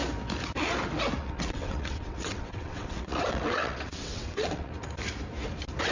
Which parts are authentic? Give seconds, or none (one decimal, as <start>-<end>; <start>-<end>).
0.0-1.2; 4.7-5.9